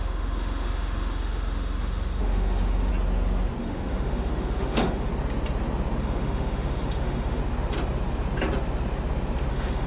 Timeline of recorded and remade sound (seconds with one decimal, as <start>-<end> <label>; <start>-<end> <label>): 0.0-2.9 remade; 2.9-3.6 recorded; 3.6-5.1 remade; 5.1-6.0 recorded; 6.0-7.4 remade; 7.4-9.5 recorded; 9.5-9.9 remade